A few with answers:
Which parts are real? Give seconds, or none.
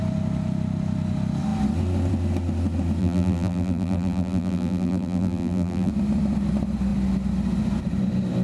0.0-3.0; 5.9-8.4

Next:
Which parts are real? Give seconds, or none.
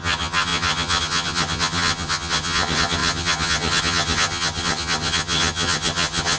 none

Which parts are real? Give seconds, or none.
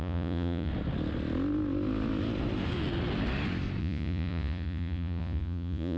0.7-3.8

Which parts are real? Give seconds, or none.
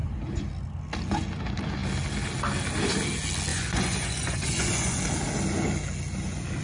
0.0-3.5; 5.0-6.6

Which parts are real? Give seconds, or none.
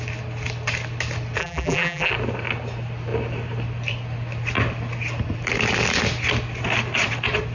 0.0-1.4; 2.1-7.5